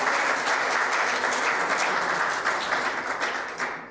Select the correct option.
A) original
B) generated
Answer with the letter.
A